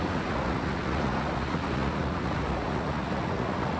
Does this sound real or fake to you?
fake